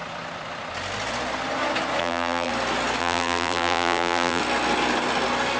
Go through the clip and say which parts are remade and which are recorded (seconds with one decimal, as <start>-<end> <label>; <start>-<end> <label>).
0.0-2.0 recorded; 2.0-2.5 remade; 2.5-3.0 recorded; 3.0-4.4 remade; 4.4-5.6 recorded